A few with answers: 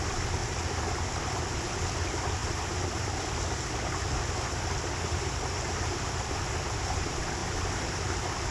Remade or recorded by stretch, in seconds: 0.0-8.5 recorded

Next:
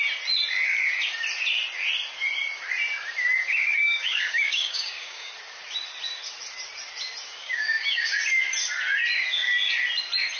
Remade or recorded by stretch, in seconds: 0.0-3.8 recorded; 3.8-5.3 remade; 5.3-7.4 recorded; 7.4-8.2 remade; 8.2-10.4 recorded

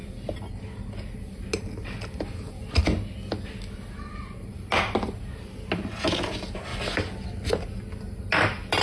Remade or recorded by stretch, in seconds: 0.0-8.8 recorded

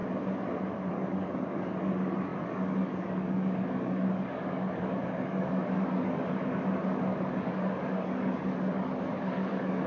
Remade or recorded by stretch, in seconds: 0.0-0.9 recorded; 0.9-9.9 remade

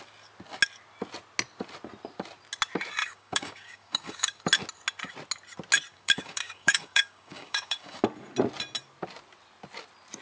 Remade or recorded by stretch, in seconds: 0.0-3.0 recorded; 3.0-4.4 remade; 4.4-5.9 recorded; 5.9-8.0 remade; 8.0-10.2 recorded

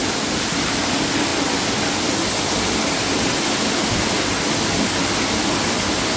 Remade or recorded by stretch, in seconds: 0.0-6.2 recorded

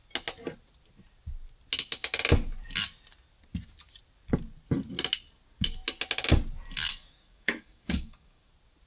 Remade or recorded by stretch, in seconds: 0.0-6.9 recorded; 6.9-8.5 remade; 8.5-8.9 recorded

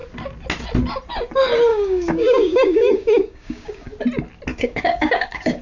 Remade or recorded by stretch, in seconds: 0.0-1.7 recorded; 1.7-3.9 remade; 3.9-4.5 recorded; 4.5-5.6 remade